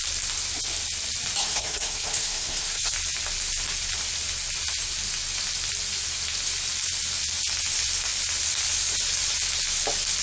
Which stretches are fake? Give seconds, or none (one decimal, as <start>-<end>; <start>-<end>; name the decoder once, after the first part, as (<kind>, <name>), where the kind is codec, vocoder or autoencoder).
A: 1.4-2.9 (codec, SNAC)